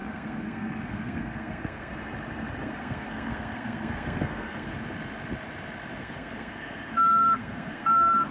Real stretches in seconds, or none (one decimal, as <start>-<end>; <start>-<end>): 1.9-2.6; 4.7-6.0